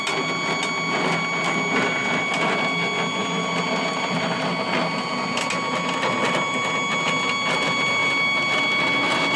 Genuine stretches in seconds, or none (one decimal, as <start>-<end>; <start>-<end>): 0.0-3.2; 4.5-9.4